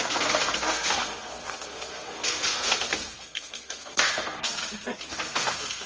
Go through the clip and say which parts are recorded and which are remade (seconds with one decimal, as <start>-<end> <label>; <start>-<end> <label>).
0.0-4.6 remade; 4.6-5.1 recorded; 5.1-5.9 remade